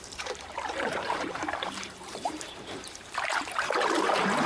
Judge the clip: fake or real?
fake